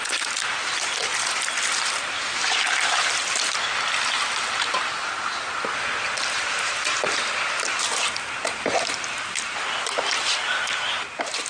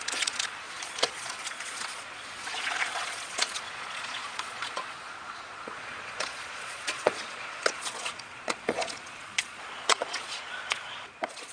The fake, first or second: second